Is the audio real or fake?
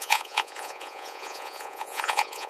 fake